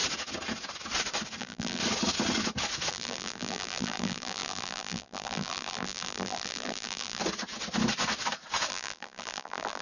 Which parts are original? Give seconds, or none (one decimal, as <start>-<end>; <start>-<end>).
0.0-1.4; 1.8-2.9; 7.2-8.7